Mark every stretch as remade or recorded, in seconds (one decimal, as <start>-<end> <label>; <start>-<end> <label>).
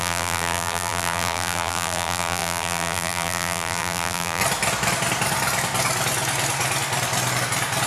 0.0-4.4 remade; 4.4-7.9 recorded